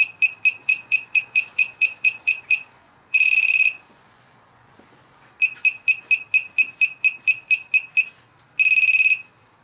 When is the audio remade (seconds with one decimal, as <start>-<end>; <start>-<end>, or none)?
0.6-5.3

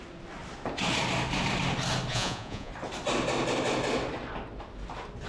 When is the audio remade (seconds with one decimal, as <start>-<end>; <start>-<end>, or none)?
2.1-2.7